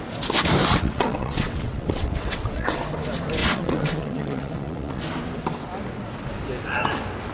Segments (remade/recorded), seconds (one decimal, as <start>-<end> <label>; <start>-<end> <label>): 0.0-0.6 recorded; 0.6-2.8 remade; 2.8-3.4 recorded; 3.4-5.0 remade; 5.0-7.3 recorded